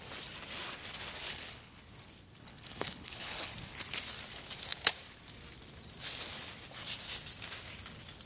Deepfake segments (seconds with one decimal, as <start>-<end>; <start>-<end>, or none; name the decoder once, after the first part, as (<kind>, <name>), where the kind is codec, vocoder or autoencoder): 1.3-1.8 (codec, HILCodec); 2.4-3.5